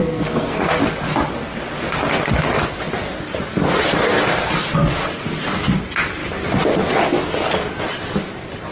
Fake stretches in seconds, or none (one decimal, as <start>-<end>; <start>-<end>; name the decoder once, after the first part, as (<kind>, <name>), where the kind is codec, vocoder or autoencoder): 0.0-0.7 (codec, SNAC)